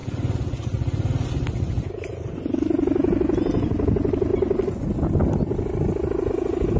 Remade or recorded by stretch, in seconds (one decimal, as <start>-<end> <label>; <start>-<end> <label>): 0.0-6.8 recorded